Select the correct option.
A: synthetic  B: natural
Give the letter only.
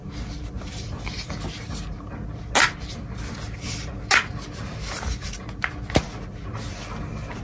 B